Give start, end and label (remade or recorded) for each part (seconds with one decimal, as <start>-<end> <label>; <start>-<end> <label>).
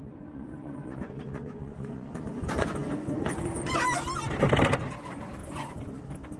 0.0-3.8 remade; 3.8-5.4 recorded; 5.4-6.0 remade; 6.0-6.4 recorded